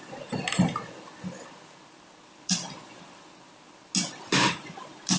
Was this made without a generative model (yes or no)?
yes